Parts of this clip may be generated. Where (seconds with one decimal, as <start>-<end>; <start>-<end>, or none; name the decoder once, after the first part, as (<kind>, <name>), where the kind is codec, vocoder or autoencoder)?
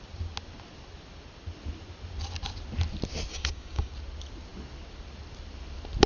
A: 3.3-3.9 (codec, DAC)